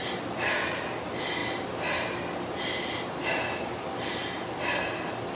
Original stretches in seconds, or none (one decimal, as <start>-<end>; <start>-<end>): 0.0-5.3